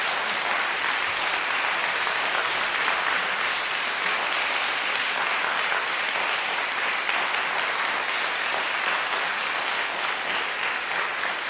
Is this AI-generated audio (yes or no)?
no